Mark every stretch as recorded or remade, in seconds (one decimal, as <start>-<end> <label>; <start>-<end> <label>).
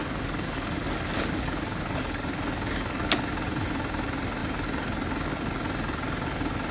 0.0-3.3 remade; 3.3-6.7 recorded